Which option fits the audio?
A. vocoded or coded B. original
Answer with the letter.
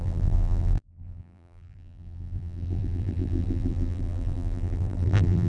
A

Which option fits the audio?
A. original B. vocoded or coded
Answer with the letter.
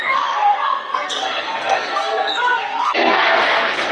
B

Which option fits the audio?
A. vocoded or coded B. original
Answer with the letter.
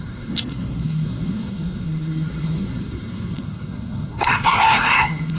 A